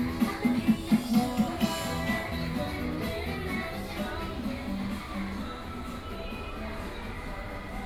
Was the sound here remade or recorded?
recorded